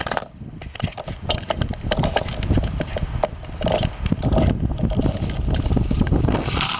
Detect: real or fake real